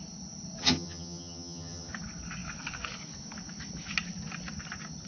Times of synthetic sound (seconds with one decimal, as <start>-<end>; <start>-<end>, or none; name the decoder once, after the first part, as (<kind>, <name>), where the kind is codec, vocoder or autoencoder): 0.6-1.9 (vocoder, HiFi-GAN)